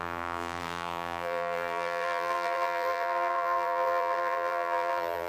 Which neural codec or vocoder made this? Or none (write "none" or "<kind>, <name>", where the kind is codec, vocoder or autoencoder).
vocoder, BigVGAN v2